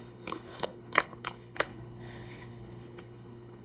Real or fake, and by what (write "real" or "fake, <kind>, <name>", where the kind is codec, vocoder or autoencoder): fake, codec, HILCodec